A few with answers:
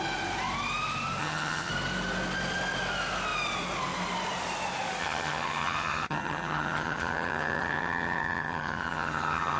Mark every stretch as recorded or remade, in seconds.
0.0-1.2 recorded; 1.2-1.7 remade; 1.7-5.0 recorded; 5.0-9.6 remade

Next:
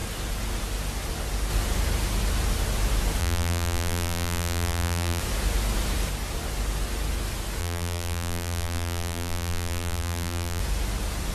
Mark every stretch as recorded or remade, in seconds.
0.0-3.2 recorded; 3.2-5.2 remade; 5.2-7.6 recorded; 7.6-10.6 remade; 10.6-11.3 recorded